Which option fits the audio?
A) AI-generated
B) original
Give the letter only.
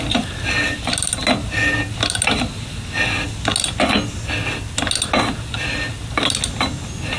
B